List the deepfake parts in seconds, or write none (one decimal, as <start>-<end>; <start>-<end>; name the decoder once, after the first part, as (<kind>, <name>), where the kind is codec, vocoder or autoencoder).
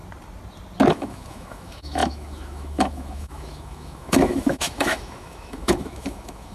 0.9-6.5 (autoencoder, DAC-VAE)